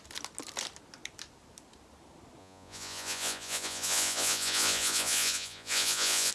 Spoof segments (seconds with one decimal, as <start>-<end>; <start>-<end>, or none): 2.4-6.3